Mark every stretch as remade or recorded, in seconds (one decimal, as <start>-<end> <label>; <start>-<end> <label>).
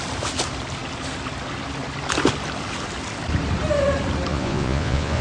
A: 0.0-4.3 recorded; 4.3-5.2 remade